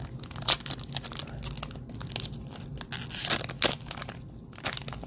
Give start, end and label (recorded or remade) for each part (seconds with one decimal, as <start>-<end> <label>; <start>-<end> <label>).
0.0-5.1 recorded